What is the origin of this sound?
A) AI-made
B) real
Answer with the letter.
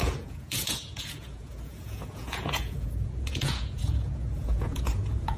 A